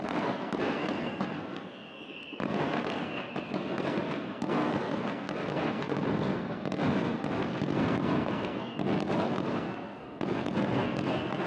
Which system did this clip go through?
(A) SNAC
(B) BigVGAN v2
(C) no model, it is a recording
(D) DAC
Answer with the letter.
A